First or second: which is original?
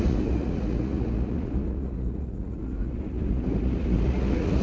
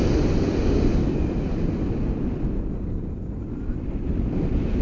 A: second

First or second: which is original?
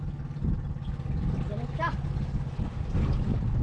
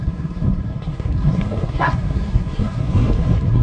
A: first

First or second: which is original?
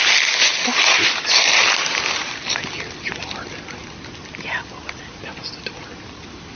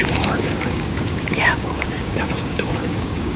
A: first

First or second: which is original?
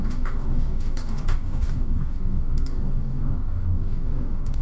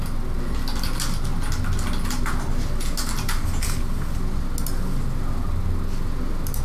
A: second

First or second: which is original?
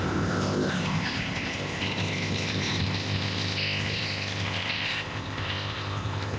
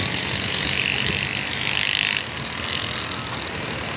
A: second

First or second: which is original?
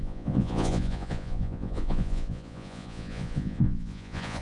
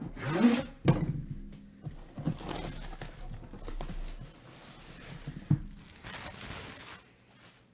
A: second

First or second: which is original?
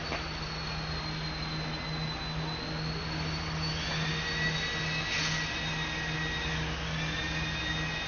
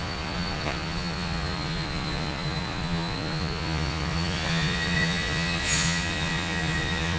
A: first